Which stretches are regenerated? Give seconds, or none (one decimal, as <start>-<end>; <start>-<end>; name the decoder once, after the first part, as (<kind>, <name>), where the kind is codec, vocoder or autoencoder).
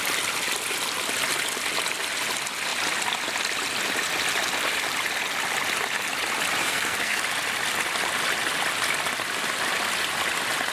6.6-7.2 (codec, SNAC)